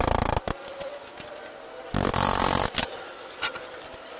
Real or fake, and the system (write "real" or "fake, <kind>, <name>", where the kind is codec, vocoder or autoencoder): real